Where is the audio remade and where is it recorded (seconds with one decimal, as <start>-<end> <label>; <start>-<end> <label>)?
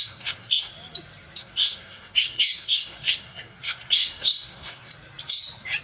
0.0-0.7 remade; 0.7-1.4 recorded; 1.4-4.9 remade; 4.9-5.8 recorded